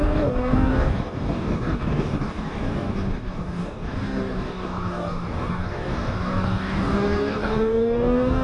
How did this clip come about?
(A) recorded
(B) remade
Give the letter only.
B